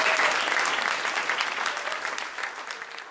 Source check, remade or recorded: remade